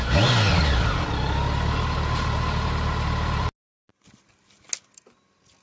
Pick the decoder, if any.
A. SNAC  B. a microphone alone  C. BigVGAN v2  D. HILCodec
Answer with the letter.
B